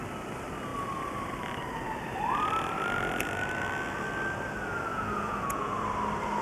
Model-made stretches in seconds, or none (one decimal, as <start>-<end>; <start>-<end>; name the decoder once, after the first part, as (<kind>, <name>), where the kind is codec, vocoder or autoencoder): 4.9-5.8 (vocoder, Vocos)